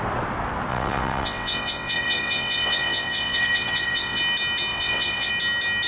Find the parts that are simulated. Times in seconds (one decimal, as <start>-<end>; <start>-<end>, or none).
0.7-4.2; 4.7-5.3